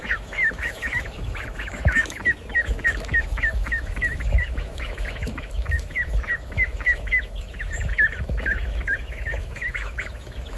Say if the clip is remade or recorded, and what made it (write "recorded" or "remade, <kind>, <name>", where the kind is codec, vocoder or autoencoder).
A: remade, autoencoder, DAC-VAE